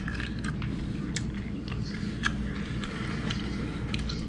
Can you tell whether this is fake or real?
real